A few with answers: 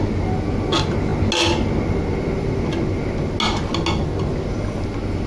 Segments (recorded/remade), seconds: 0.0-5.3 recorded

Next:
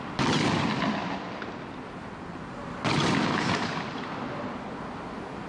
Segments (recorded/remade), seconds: 0.0-5.5 recorded

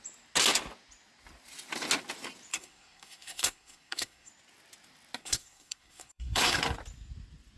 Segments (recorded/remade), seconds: 0.0-2.5 recorded; 2.5-4.3 remade; 4.3-5.2 recorded; 5.2-6.6 remade; 6.6-7.6 recorded

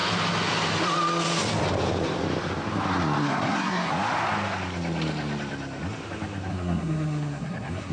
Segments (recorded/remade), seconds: 0.0-3.2 recorded; 3.2-3.9 remade; 3.9-6.5 recorded; 6.5-7.9 remade